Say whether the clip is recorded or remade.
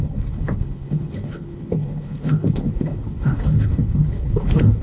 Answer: remade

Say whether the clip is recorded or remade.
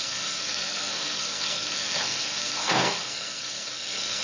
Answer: remade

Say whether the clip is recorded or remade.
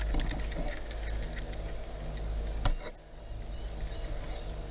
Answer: recorded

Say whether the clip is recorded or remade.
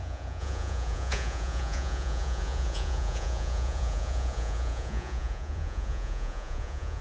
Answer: remade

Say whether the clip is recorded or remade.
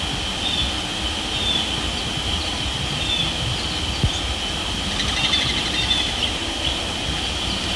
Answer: recorded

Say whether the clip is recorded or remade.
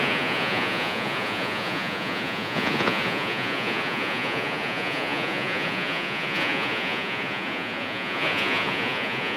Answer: remade